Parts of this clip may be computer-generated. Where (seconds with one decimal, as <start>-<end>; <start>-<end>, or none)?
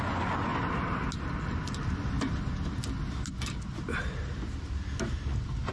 none